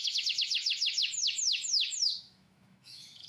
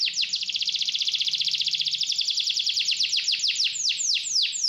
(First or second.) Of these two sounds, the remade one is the first